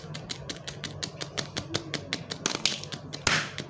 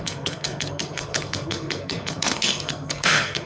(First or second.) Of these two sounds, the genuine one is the first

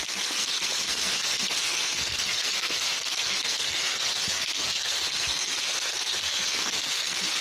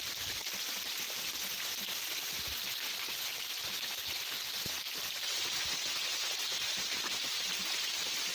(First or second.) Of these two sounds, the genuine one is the second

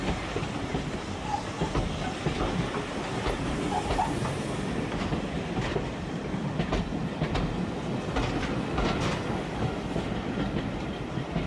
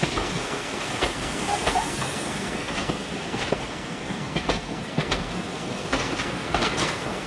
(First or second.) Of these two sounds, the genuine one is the first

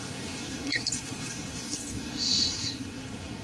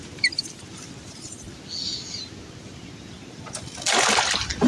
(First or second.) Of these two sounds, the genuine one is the second